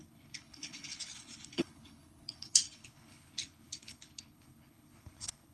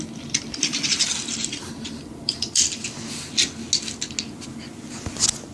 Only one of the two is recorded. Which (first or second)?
second